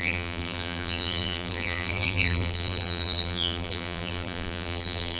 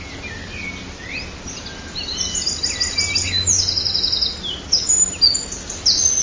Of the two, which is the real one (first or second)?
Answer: second